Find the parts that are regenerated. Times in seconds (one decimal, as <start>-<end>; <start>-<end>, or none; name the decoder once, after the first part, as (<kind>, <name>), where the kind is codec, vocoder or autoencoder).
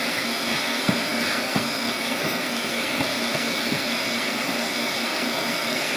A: 0.0-6.0 (codec, SNAC)